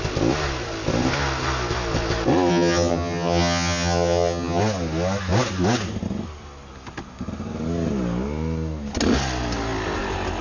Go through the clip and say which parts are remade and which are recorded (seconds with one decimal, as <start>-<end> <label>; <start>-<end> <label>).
0.0-2.5 recorded; 2.5-4.6 remade; 4.6-10.4 recorded